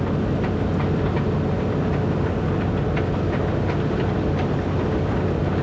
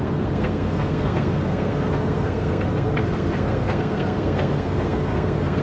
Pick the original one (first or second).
first